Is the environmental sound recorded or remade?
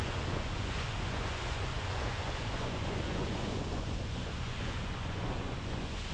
remade